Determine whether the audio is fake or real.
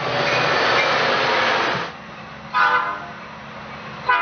real